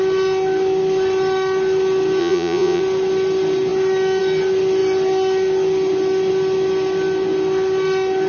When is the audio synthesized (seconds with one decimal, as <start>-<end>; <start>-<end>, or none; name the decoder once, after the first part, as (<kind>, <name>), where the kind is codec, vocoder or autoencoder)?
2.2-2.8 (vocoder, Vocos)